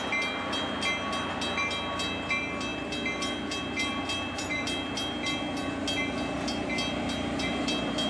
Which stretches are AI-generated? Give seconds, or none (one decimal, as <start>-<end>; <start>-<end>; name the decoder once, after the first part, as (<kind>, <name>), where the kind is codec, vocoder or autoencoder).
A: none

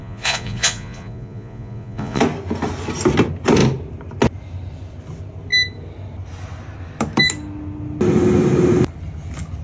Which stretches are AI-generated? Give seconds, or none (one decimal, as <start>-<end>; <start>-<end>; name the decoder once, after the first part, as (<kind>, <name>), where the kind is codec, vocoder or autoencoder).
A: 0.0-2.2 (vocoder, Vocos)

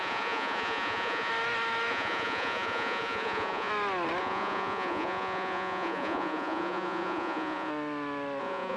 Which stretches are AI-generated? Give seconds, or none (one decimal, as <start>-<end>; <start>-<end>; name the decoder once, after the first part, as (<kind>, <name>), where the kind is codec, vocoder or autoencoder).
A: 0.0-1.3 (vocoder, Vocos); 1.9-3.7; 4.2-7.7; 8.4-8.8

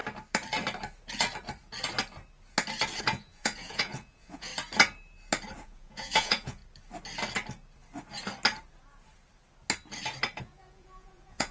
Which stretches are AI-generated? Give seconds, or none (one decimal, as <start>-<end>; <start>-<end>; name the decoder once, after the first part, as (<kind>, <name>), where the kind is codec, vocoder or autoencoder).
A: 3.0-4.5 (vocoder, Vocos); 5.6-6.6; 10.4-11.5

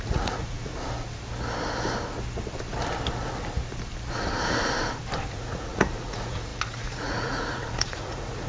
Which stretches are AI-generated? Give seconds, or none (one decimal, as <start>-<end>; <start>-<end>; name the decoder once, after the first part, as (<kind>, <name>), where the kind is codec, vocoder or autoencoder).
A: 0.0-0.7 (vocoder, Vocos); 5.3-8.5